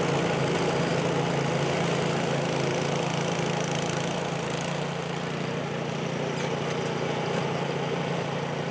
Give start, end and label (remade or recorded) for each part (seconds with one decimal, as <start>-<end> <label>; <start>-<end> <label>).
0.0-8.7 recorded